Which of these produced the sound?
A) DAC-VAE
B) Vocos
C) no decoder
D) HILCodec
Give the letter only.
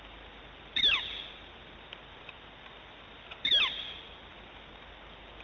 C